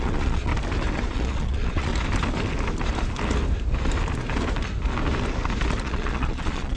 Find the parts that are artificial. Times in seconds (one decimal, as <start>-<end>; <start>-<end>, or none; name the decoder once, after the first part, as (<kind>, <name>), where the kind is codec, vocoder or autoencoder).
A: 0.0-0.5 (vocoder, Vocos); 1.1-1.9; 5.8-6.8